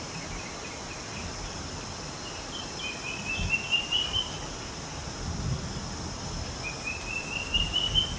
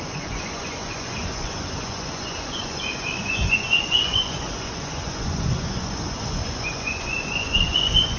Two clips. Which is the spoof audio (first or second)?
second